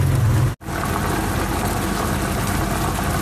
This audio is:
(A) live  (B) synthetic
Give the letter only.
A